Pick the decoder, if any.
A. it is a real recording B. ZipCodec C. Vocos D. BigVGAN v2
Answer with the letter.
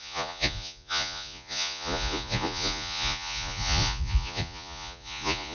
C